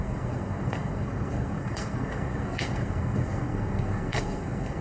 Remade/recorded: remade